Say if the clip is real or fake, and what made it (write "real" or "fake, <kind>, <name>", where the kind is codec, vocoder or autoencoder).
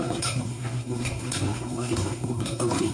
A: fake, codec, SNAC